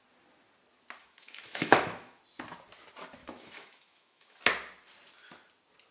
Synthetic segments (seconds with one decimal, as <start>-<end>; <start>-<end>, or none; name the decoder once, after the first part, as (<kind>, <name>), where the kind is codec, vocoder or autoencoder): 1.0-2.2 (autoencoder, DAC-VAE); 3.2-4.4